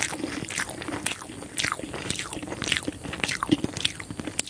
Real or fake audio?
fake